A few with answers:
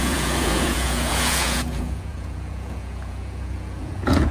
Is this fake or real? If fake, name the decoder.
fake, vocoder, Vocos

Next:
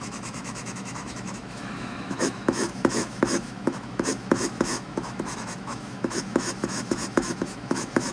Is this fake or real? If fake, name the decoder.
fake, autoencoder, DAC-VAE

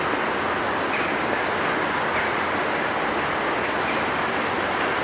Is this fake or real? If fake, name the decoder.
real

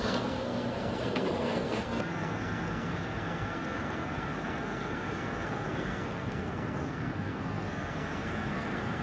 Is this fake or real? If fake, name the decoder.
fake, codec, SNAC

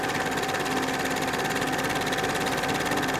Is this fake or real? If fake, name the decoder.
real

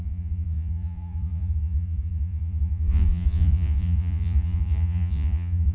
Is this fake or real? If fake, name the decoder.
fake, vocoder, Vocos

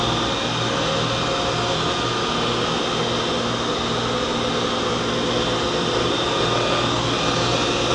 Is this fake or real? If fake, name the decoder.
real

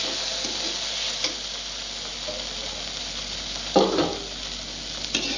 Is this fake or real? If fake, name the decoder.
real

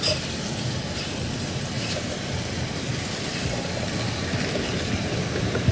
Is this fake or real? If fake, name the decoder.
fake, vocoder, BigVGAN v2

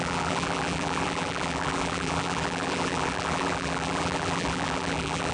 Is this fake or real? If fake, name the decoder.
fake, vocoder, BigVGAN v2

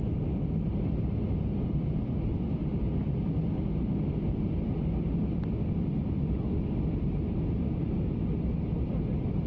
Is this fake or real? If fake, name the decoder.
real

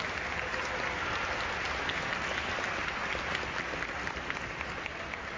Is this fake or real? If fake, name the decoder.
real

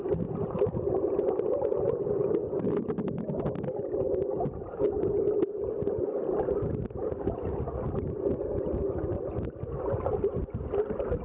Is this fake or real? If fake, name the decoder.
real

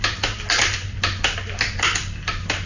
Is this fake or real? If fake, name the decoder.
real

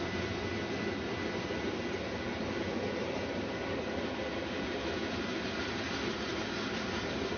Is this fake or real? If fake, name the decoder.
real